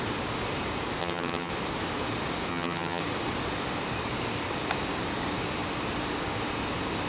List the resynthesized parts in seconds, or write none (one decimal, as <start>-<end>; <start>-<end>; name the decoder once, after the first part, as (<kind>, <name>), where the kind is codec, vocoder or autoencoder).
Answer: 1.0-1.5 (vocoder, HiFi-GAN); 2.5-3.0